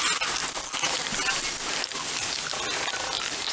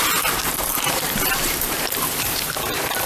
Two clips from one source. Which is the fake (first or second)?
second